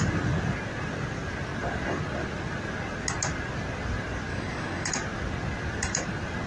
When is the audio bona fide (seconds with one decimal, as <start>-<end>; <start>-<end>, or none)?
0.0-4.3; 4.9-6.5